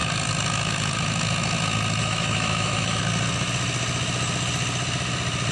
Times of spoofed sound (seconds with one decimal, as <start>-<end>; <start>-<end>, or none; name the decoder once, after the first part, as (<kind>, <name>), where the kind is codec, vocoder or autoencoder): 2.0-3.0 (autoencoder, DAC-VAE)